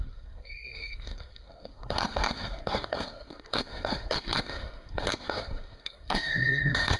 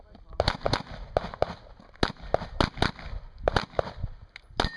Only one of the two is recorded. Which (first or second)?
second